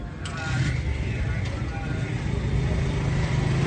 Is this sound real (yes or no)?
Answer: yes